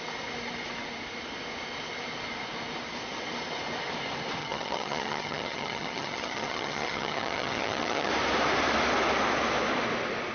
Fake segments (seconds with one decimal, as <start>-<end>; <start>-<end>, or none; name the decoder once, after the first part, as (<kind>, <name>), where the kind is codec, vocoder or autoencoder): 4.4-8.1 (vocoder, HiFi-GAN)